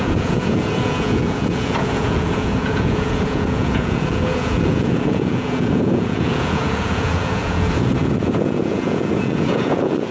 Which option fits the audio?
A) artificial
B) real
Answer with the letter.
A